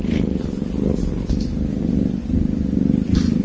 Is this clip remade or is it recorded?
recorded